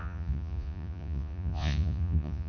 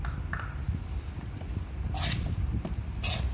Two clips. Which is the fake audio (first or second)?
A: first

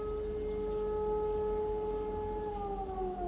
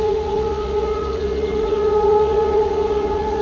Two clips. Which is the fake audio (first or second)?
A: second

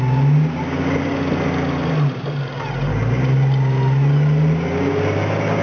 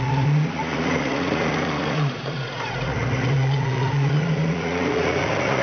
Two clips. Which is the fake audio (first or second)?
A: second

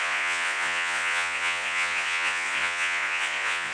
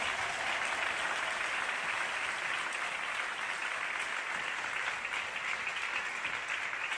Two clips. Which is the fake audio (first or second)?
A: first